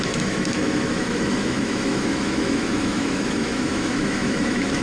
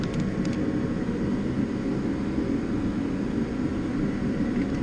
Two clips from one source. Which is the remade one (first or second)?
first